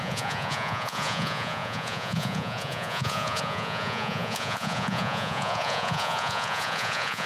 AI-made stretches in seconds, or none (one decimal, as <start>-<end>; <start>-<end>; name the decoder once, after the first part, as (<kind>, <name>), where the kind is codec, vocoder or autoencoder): 0.0-7.3 (vocoder, Vocos)